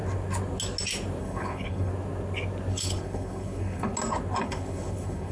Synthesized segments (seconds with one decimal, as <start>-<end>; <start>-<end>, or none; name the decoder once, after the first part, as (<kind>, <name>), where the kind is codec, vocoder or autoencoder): 1.2-1.9 (codec, HILCodec); 2.7-3.9; 4.4-5.3